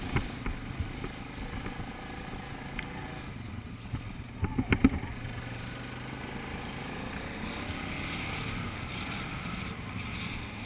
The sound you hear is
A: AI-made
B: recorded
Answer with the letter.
B